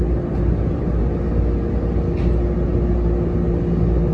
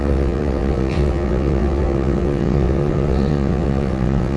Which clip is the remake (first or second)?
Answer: second